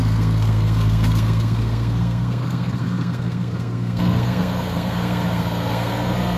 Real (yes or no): no